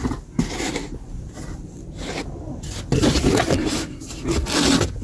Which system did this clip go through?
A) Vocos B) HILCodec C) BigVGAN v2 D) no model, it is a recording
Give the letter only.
D